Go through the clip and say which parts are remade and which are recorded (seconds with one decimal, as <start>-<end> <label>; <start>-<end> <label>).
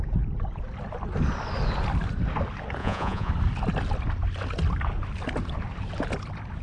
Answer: 0.0-2.8 recorded; 2.8-3.3 remade; 3.3-6.6 recorded